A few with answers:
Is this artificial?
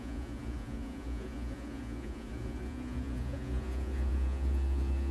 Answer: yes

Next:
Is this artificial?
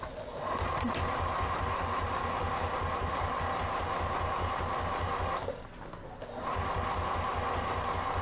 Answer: no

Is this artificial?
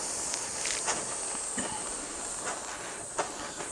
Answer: no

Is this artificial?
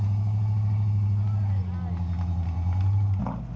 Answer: no